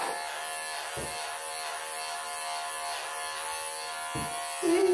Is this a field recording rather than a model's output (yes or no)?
yes